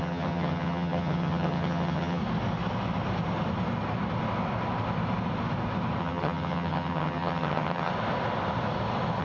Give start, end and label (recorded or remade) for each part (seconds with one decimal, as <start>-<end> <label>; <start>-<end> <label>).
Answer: 0.0-2.2 remade; 2.2-6.0 recorded; 6.0-7.9 remade; 7.9-9.2 recorded